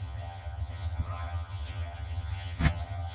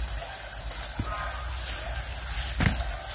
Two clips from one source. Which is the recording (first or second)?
second